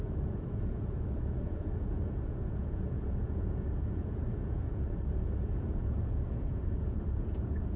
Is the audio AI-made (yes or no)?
yes